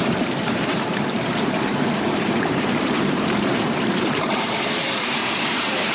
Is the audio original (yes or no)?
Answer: no